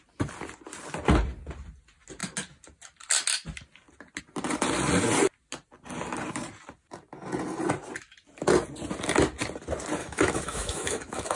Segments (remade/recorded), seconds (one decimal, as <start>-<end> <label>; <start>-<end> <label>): 0.0-10.0 recorded; 10.0-11.4 remade